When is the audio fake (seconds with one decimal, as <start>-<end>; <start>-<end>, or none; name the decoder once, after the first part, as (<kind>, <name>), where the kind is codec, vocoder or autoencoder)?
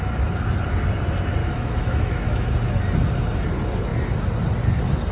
1.4-2.5 (autoencoder, DAC-VAE)